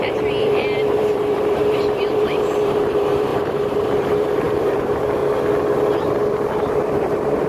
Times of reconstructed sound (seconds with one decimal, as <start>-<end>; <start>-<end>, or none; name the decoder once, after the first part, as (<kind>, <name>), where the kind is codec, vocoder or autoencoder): 0.0-5.2 (vocoder, BigVGAN v2); 6.9-7.5